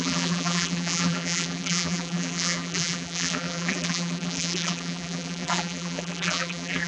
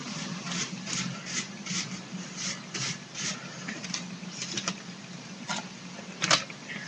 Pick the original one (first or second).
second